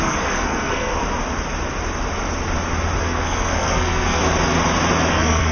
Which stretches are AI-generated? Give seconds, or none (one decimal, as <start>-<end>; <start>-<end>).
0.0-1.0; 3.0-4.2; 5.1-5.5